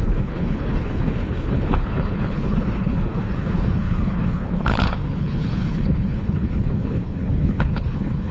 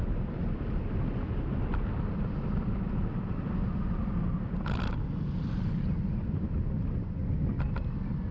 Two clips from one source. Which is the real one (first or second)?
second